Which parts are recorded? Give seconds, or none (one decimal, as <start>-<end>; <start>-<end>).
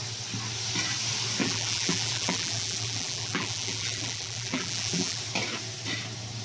0.0-1.4; 5.2-6.4